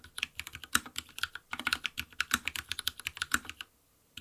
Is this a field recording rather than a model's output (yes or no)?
yes